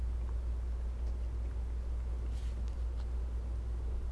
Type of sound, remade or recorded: recorded